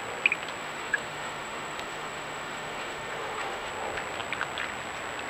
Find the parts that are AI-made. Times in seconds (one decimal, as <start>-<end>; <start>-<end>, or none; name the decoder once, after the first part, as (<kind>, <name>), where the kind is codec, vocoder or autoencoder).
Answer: 0.6-3.7 (autoencoder, DAC-VAE)